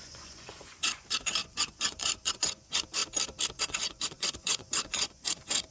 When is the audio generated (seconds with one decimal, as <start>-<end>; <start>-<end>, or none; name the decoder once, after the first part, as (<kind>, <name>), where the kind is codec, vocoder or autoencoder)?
0.0-3.0 (vocoder, Vocos); 3.6-5.7